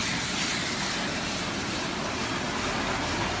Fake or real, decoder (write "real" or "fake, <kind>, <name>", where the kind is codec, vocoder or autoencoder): real